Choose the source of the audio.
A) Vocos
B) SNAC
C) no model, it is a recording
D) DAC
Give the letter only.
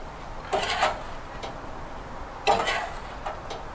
C